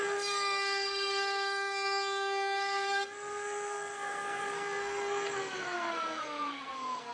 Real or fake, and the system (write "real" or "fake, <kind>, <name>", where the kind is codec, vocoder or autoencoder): fake, codec, SNAC